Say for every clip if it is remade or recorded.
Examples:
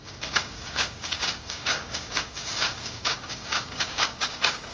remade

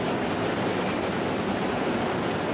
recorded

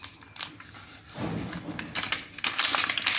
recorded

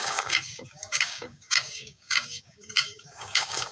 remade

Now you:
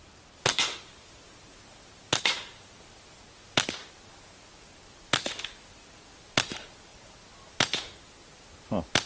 recorded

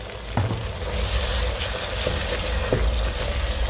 recorded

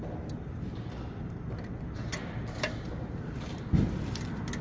recorded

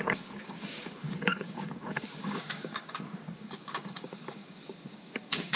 remade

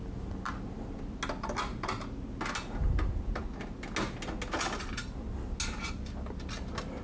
recorded